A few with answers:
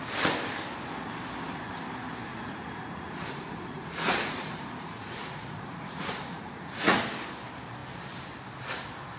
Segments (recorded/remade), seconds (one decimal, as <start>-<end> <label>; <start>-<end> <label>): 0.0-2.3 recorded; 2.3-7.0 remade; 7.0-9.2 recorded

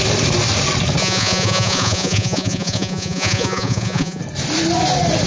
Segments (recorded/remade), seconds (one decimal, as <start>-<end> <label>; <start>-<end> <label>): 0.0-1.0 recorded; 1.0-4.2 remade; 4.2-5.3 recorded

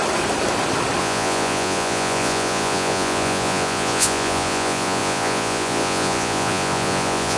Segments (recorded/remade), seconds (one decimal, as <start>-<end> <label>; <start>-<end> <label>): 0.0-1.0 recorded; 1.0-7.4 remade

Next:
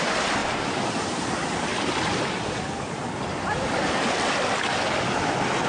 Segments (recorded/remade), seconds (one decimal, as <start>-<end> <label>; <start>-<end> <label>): 0.0-5.7 remade

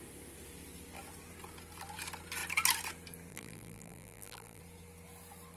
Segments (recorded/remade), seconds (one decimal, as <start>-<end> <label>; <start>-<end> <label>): 0.0-3.3 recorded; 3.3-4.6 remade; 4.6-5.6 recorded

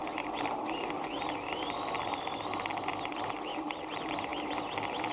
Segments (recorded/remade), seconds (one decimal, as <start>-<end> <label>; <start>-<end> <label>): 0.0-5.1 recorded